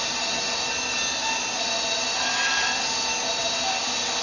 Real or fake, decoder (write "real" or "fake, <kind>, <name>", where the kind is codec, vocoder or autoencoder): real